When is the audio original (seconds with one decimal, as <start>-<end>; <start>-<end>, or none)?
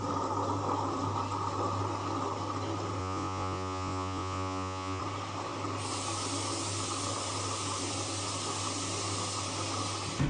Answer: 0.0-3.0; 5.0-10.3